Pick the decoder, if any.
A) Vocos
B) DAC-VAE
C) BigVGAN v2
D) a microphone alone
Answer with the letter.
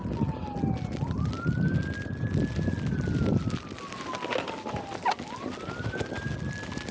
D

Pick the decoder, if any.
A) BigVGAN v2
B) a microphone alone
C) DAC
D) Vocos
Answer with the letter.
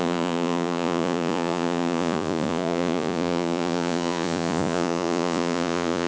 D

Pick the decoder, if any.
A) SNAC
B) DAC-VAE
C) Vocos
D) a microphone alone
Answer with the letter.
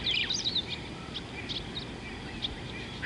D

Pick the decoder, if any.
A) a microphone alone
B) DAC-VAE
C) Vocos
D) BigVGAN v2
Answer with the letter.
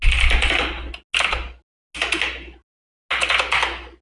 A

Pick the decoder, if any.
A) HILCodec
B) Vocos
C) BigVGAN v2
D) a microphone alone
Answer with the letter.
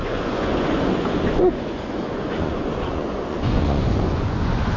B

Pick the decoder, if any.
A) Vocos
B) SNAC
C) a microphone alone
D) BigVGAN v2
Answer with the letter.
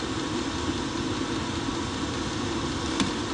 C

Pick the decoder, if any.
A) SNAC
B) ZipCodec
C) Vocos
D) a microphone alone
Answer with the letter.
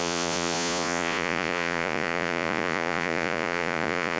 C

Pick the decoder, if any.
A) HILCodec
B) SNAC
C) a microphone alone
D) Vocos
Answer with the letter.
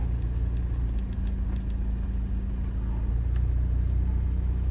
C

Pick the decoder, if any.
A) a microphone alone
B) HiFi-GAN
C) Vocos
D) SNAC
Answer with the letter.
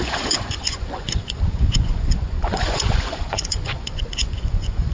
C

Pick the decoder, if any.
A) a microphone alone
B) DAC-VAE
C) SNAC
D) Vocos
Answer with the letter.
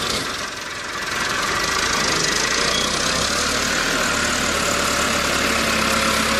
A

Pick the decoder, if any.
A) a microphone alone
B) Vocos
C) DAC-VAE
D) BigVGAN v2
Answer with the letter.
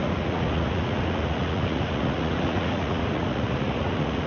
B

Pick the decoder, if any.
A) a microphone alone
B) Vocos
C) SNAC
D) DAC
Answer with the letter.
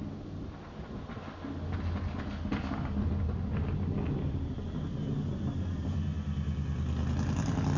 A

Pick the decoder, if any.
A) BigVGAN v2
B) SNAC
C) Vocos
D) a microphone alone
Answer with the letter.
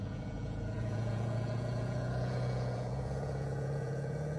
C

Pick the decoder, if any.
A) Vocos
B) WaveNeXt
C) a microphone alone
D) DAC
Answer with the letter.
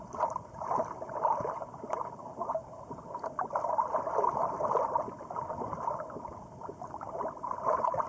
C